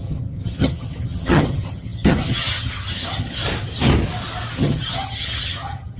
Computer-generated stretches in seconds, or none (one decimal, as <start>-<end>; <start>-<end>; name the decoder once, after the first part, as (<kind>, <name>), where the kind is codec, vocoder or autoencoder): 0.0-3.4 (vocoder, HiFi-GAN); 4.5-6.0